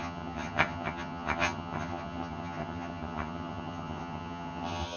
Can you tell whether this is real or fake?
fake